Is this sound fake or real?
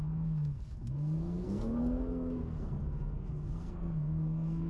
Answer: fake